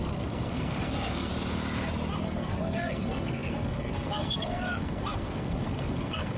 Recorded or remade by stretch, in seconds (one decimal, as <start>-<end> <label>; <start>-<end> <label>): 0.0-1.3 remade; 1.3-2.2 recorded; 2.2-6.4 remade